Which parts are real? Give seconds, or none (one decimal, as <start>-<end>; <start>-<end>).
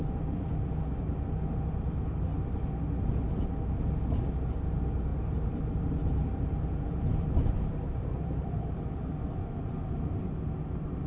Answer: 0.0-5.1; 9.1-11.1